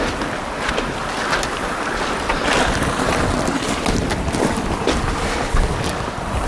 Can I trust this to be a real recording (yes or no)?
yes